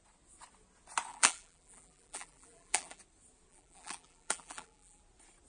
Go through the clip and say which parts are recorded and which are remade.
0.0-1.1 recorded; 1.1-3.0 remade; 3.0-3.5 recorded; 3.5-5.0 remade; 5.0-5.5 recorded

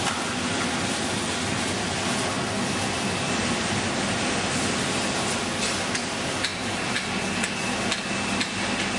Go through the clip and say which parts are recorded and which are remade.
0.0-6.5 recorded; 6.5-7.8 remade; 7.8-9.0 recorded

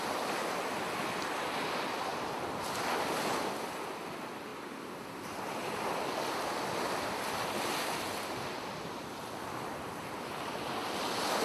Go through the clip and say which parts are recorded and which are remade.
0.0-2.1 recorded; 2.1-3.1 remade; 3.1-11.4 recorded